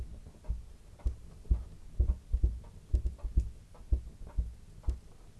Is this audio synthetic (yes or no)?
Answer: no